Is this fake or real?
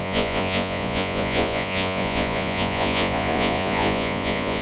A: fake